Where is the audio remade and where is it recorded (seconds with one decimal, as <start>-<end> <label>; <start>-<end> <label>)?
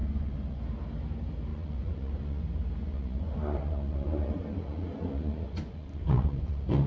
0.0-0.6 remade; 0.6-1.5 recorded; 1.5-2.4 remade; 2.4-2.8 recorded; 2.8-6.9 remade